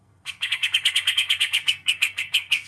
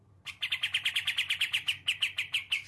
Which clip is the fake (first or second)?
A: first